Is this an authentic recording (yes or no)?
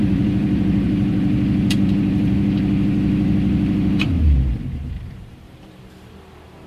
no